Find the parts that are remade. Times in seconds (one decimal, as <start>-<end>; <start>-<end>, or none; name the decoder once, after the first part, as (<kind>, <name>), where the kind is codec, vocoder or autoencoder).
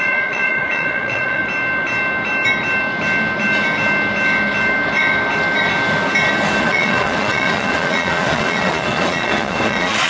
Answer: 0.0-1.4 (vocoder, Vocos); 6.6-10.1